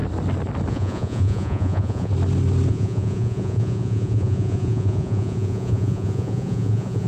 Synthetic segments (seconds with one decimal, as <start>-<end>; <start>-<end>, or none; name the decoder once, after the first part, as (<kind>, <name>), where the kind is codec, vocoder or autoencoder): 0.7-2.1 (vocoder, Vocos); 2.7-7.1